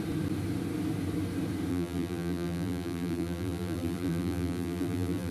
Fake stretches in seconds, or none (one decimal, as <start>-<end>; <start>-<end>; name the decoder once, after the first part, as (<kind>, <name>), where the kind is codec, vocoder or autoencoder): 1.7-5.3 (vocoder, BigVGAN v2)

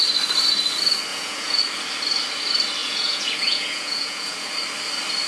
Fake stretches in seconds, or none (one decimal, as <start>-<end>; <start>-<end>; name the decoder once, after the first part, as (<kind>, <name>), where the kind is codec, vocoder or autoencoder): 1.1-1.6 (vocoder, Vocos); 2.8-4.5

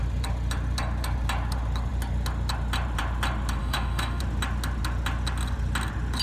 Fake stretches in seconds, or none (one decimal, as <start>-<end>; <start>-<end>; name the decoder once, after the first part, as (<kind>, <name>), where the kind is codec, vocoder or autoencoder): 3.6-4.2 (autoencoder, DAC-VAE)

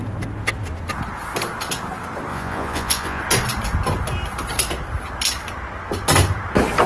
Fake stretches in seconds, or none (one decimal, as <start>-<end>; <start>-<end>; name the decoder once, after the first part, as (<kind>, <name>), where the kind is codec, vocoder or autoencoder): 2.3-3.2 (vocoder, Vocos)